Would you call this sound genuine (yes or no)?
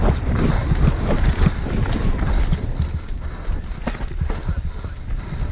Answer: yes